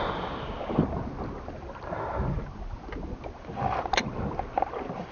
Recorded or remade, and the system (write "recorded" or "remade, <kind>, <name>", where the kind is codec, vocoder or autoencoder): recorded